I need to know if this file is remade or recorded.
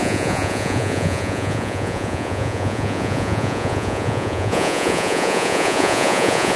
remade